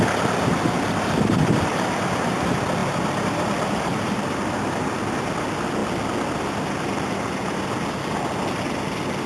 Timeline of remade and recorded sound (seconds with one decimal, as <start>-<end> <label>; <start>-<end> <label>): 0.0-1.7 recorded; 1.7-2.3 remade; 2.3-2.8 recorded; 2.8-5.1 remade; 5.1-9.3 recorded